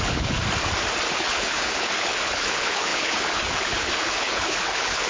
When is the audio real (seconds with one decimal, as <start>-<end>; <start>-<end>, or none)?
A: 0.4-1.1